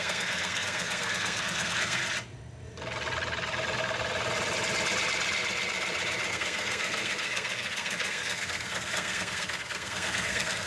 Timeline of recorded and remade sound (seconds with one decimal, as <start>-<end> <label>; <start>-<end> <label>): 0.0-2.0 remade; 2.0-6.3 recorded; 6.3-10.7 remade